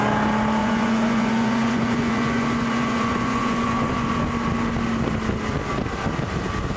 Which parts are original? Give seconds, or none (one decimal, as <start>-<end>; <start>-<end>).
0.0-0.6; 4.1-6.8